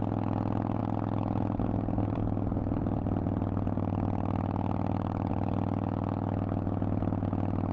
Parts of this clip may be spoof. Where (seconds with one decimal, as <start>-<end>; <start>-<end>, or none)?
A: none